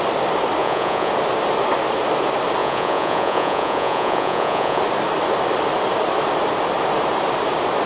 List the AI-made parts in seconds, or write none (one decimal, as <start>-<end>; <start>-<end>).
0.6-1.1; 2.6-4.8